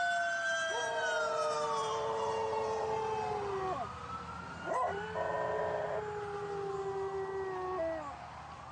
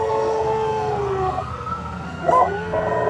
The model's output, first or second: second